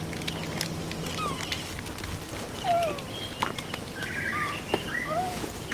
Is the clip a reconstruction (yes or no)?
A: no